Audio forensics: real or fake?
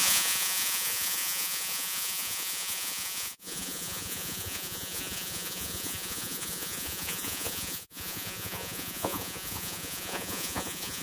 fake